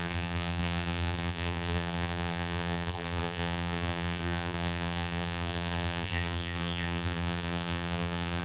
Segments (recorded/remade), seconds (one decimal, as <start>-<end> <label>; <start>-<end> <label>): 0.0-8.4 remade